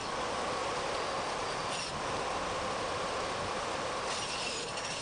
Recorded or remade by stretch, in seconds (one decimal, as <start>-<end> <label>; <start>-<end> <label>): 0.0-5.0 recorded